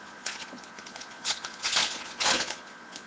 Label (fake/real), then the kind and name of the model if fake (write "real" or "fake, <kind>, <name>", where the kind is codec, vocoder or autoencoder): fake, vocoder, Vocos